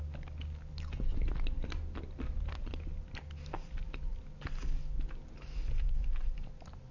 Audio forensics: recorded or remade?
recorded